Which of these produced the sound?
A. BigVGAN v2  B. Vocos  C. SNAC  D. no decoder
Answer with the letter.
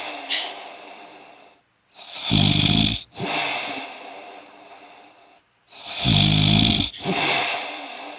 D